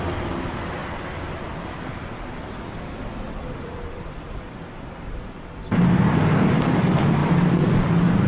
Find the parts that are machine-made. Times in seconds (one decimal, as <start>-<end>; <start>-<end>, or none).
none